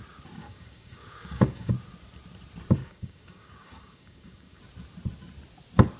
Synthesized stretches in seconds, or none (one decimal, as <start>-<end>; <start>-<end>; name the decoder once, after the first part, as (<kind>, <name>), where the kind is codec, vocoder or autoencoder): 0.4-1.7 (codec, DAC); 2.8-4.6

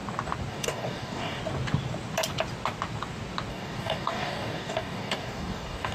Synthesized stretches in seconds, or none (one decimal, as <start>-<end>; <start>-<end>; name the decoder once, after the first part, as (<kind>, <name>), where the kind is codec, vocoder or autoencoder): 0.5-1.4 (codec, DAC); 3.5-5.9

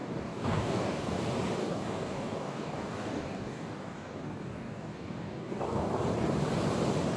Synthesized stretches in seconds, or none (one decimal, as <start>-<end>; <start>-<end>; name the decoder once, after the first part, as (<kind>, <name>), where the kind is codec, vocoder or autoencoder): 0.0-1.2 (codec, DAC); 1.6-5.9